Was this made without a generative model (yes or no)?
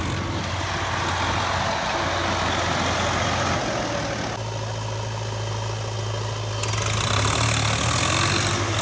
yes